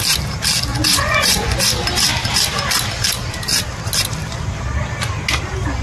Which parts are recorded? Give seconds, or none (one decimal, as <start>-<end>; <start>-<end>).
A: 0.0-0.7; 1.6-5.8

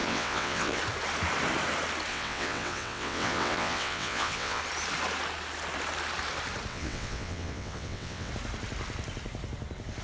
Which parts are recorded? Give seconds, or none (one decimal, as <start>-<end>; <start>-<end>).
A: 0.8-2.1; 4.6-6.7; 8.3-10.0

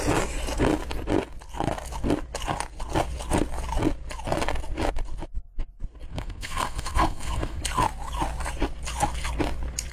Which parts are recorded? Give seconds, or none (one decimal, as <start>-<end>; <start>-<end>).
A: 0.0-6.1; 7.6-9.9

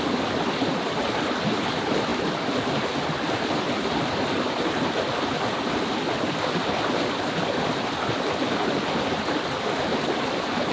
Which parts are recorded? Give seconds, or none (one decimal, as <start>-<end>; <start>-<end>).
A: 0.0-10.7

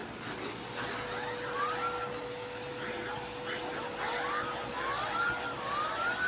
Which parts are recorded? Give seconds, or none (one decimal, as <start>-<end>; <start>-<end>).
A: 0.0-6.3

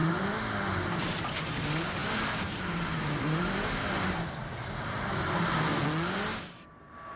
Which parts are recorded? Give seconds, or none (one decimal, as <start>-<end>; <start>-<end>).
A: 5.7-6.8